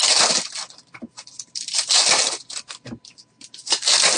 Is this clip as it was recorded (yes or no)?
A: yes